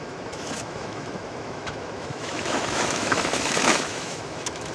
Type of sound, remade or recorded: remade